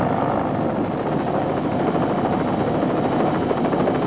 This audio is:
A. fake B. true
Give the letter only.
B